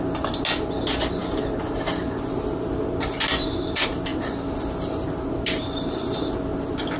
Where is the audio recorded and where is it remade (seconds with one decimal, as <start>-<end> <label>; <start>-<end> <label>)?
0.0-7.0 recorded